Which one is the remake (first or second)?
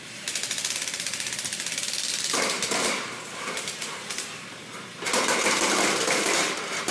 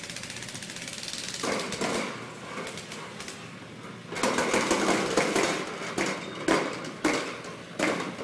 first